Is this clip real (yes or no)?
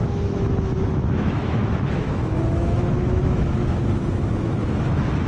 no